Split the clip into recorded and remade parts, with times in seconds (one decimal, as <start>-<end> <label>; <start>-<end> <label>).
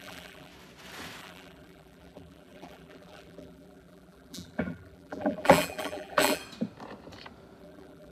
0.0-0.5 remade; 0.5-1.2 recorded; 1.2-6.4 remade; 6.4-7.6 recorded; 7.6-8.1 remade